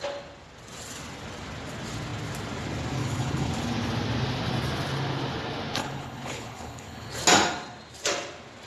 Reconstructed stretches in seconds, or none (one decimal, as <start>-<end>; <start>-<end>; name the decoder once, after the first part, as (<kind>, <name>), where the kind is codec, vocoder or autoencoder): 3.0-3.5 (codec, HILCodec); 5.8-7.1